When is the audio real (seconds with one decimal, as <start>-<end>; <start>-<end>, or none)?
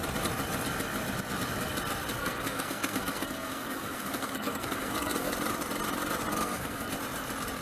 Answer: 0.0-2.2; 5.3-6.3; 6.9-7.6